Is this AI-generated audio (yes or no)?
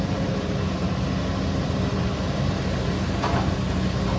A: yes